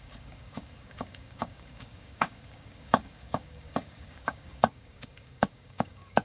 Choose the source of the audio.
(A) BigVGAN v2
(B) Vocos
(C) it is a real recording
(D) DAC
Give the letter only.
D